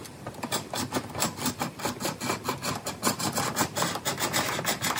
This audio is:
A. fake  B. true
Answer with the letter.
B